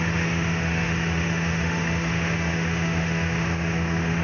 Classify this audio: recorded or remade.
remade